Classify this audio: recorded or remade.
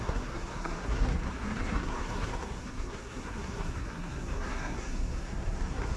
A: remade